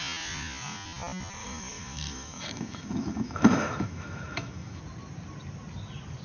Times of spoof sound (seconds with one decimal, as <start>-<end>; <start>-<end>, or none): 1.4-4.8